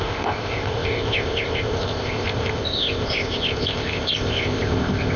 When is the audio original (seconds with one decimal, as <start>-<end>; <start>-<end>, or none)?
none